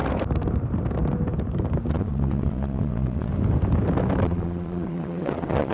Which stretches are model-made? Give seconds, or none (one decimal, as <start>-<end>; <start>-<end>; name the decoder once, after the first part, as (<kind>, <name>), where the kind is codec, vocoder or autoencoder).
1.9-3.3 (vocoder, Vocos); 4.2-5.7